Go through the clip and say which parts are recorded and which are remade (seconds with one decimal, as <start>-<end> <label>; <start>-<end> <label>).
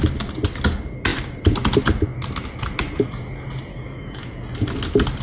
0.0-3.7 recorded; 3.7-4.2 remade; 4.2-5.2 recorded